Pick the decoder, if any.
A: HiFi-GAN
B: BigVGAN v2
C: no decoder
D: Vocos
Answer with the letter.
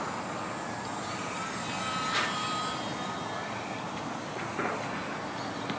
C